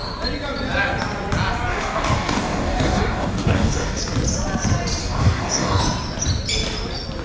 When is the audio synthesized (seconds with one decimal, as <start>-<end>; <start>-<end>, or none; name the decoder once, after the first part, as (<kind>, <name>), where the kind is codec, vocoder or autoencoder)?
1.7-4.0 (codec, DAC); 5.0-5.8